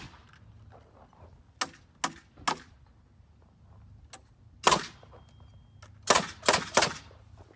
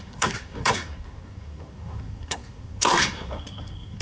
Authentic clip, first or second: first